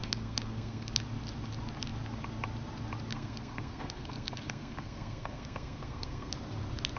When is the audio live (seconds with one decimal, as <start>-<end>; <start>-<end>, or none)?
0.9-3.1; 6.3-7.0